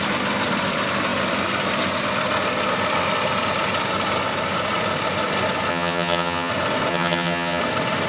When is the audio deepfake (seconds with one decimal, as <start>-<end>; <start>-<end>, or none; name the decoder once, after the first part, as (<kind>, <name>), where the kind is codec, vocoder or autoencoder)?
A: 5.7-6.5 (vocoder, HiFi-GAN); 6.9-7.6